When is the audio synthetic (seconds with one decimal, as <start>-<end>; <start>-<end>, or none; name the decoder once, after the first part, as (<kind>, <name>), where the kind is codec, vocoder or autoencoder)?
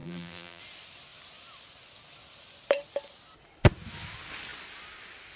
0.0-0.6 (vocoder, BigVGAN v2)